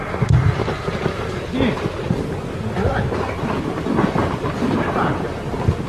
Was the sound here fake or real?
real